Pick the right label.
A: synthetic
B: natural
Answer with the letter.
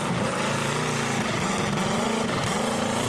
B